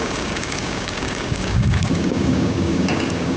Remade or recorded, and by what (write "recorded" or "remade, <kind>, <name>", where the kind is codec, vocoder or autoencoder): remade, codec, DAC